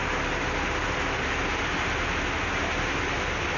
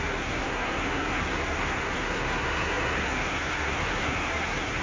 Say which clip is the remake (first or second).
second